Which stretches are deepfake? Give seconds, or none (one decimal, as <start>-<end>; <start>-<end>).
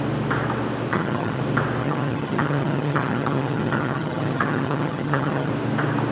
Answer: 0.9-1.4; 1.8-5.5